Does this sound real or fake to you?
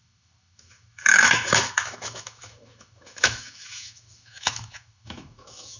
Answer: fake